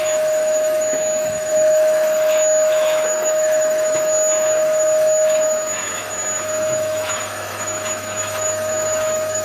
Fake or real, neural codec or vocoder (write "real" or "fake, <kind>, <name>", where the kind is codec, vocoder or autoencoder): fake, autoencoder, DAC-VAE